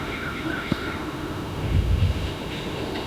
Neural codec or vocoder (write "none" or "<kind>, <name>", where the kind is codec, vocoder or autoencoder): autoencoder, DAC-VAE